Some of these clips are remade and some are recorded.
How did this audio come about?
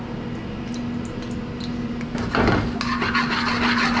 recorded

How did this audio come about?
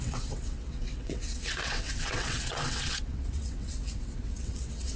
remade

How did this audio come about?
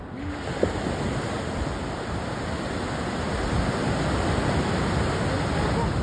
recorded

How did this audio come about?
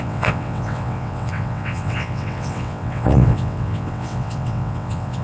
remade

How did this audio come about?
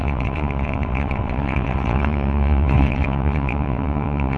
remade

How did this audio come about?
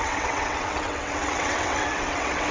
remade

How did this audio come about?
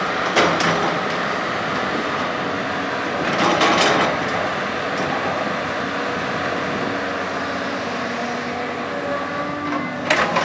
recorded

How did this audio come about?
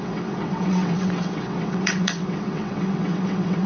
remade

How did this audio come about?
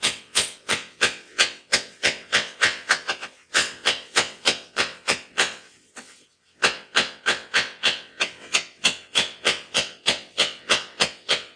remade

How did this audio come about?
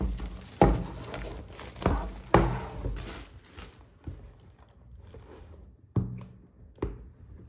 recorded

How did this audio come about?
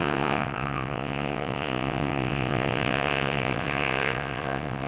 remade